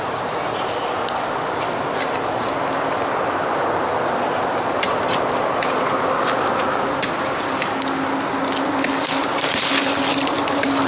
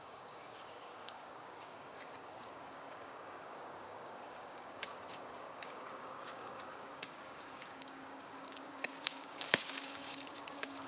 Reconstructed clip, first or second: second